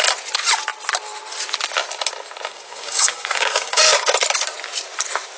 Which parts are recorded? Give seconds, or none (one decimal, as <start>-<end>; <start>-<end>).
0.0-2.5; 3.8-5.4